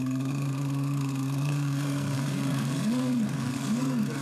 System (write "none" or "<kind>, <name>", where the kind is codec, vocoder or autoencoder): codec, SNAC